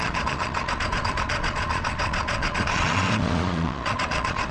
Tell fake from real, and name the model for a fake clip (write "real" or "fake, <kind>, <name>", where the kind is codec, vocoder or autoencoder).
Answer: fake, vocoder, Vocos